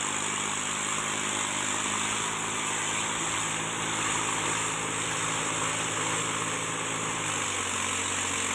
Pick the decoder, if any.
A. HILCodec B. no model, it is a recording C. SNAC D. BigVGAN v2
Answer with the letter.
B